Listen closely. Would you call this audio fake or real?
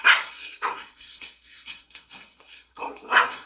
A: fake